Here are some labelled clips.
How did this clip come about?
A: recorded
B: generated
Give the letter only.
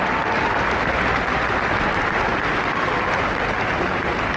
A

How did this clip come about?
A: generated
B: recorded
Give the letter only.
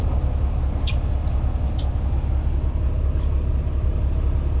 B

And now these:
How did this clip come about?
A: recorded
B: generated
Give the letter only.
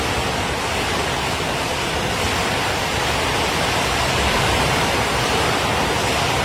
A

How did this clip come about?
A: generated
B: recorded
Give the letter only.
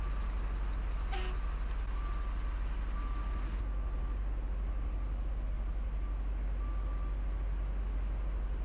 B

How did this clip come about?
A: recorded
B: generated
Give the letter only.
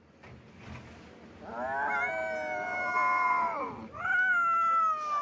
A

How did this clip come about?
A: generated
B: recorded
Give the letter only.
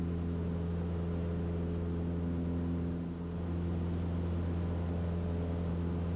B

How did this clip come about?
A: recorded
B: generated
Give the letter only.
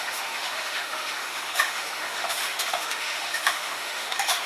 B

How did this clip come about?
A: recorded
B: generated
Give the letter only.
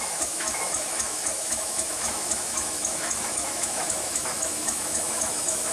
B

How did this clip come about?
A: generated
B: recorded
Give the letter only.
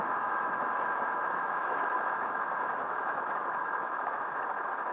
A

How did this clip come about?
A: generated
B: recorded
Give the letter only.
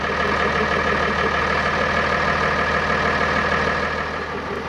B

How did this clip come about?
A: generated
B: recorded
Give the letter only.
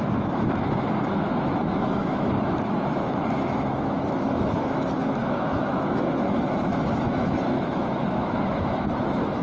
A